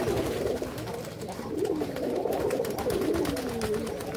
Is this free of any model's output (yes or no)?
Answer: no